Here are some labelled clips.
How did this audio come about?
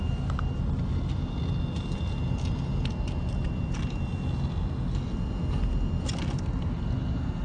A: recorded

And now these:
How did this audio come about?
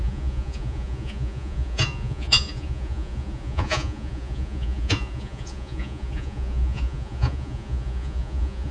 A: remade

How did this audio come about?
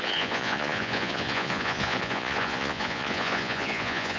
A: remade